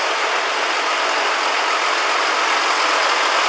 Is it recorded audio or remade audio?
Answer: recorded